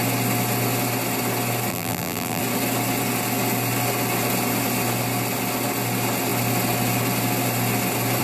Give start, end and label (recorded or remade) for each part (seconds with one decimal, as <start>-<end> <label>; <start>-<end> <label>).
0.0-1.7 recorded; 1.7-2.4 remade; 2.4-8.2 recorded

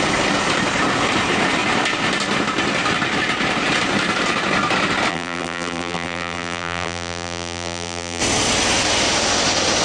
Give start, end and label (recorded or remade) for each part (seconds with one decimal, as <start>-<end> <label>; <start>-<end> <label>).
0.0-5.1 recorded; 5.1-8.2 remade; 8.2-9.8 recorded

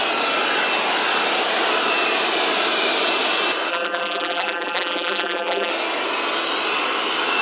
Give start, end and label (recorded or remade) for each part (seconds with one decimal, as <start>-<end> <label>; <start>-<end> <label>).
0.0-3.7 recorded; 3.7-5.7 remade; 5.7-7.4 recorded

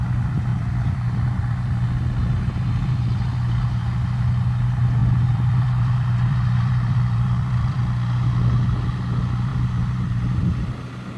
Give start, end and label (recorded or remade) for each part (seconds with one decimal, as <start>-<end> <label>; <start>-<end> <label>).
0.0-0.5 recorded; 0.5-1.4 remade; 1.4-5.0 recorded; 5.0-7.8 remade; 7.8-11.2 recorded

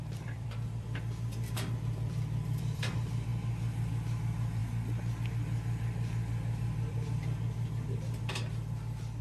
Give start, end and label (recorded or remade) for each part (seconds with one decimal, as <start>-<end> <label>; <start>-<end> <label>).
0.0-3.3 remade; 3.3-3.9 recorded; 3.9-4.6 remade; 4.6-5.3 recorded; 5.3-9.2 remade